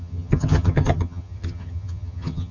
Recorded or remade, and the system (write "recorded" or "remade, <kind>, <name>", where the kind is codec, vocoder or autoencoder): remade, vocoder, HiFi-GAN